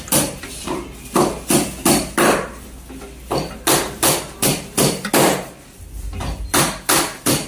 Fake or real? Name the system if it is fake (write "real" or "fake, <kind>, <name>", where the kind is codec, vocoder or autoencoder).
real